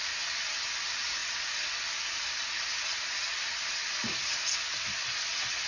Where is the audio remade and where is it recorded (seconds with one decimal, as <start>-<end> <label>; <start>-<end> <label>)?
0.0-5.7 recorded